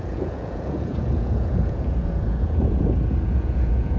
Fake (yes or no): yes